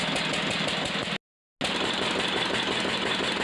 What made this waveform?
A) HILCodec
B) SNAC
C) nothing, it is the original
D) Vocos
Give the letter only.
C